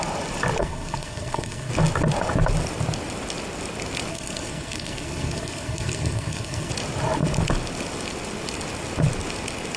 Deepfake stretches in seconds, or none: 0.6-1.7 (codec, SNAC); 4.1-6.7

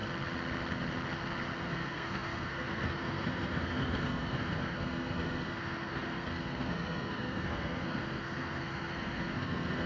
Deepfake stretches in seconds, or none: 1.6-9.9 (codec, SNAC)

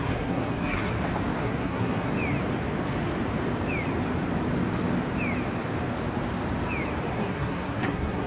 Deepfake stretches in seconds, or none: 0.0-0.9 (codec, SNAC); 1.4-2.1; 7.1-8.3

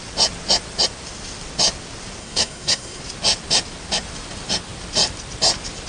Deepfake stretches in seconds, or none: 2.2-3.0 (codec, SNAC)